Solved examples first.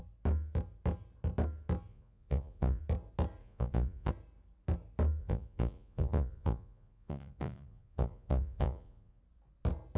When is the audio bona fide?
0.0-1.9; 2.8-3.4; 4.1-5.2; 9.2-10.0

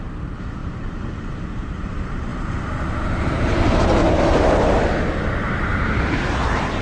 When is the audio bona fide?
0.0-0.6; 1.9-4.0; 4.9-5.7

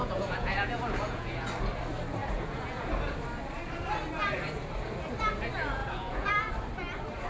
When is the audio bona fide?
1.5-2.2; 2.9-5.8; 6.3-7.3